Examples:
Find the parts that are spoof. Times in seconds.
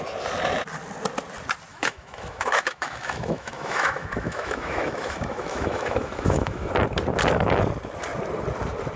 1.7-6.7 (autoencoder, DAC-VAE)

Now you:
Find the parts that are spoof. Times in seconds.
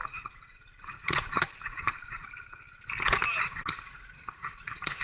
none